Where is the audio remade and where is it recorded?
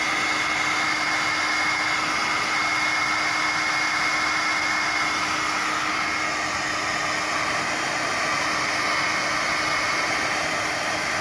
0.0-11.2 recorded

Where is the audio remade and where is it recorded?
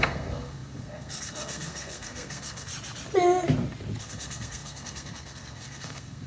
0.0-2.7 remade; 2.7-4.0 recorded; 4.0-6.3 remade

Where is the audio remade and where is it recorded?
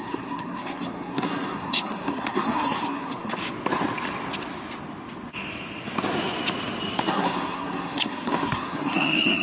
0.0-3.4 remade; 3.4-7.1 recorded; 7.1-9.4 remade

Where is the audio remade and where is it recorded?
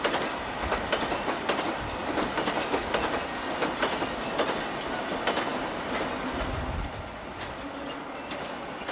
0.0-8.9 recorded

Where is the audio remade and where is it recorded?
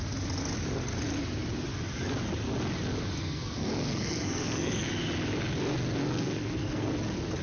0.0-3.2 recorded; 3.2-4.9 remade; 4.9-6.0 recorded; 6.0-6.9 remade; 6.9-7.4 recorded